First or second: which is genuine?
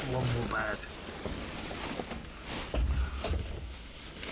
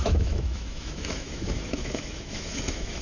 first